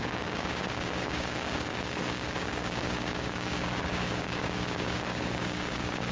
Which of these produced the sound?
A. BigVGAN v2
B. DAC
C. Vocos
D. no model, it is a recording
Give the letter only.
B